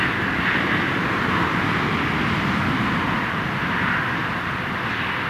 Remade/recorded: recorded